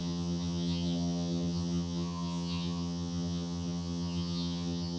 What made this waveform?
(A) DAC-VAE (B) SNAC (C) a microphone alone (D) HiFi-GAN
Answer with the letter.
D